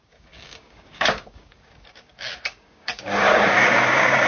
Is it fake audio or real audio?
fake